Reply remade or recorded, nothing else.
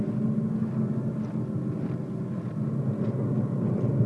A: recorded